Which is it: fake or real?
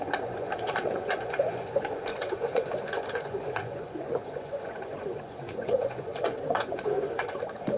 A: fake